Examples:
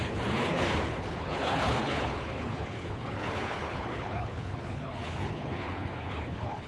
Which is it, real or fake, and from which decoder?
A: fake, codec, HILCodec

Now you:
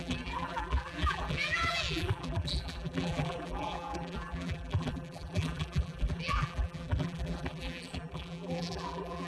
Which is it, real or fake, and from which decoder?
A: fake, vocoder, BigVGAN v2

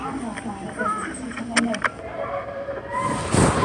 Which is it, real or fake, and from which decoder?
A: real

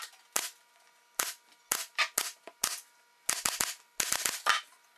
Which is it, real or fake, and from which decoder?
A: real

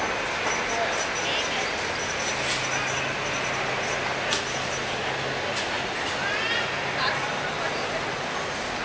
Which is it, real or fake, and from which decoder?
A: real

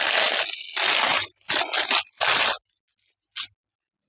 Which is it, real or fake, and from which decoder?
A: real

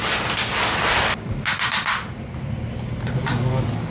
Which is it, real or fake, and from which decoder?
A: real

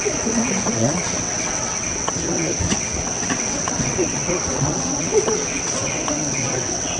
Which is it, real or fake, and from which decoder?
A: fake, vocoder, WaveNeXt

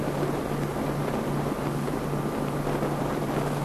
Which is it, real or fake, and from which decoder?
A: real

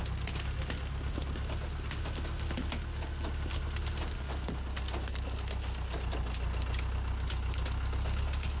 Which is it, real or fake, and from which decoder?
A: real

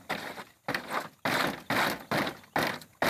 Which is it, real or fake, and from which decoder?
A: real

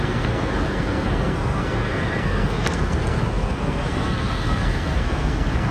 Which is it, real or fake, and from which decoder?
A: fake, codec, SNAC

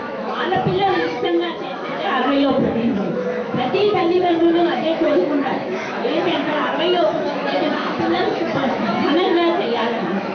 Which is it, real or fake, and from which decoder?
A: fake, autoencoder, DAC-VAE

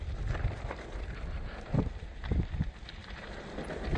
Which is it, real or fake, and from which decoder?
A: real